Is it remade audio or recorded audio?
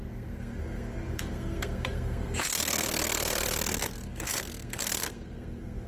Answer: remade